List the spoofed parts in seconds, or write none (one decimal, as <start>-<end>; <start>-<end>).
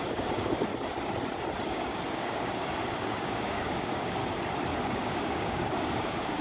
0.0-0.7; 1.7-4.2; 4.8-6.4